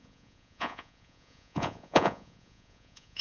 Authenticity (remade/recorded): remade